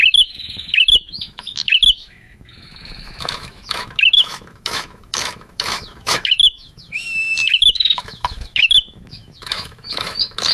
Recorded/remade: remade